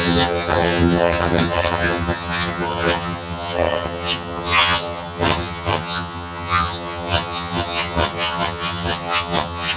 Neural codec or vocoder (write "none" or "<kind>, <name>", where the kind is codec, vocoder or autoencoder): vocoder, HiFi-GAN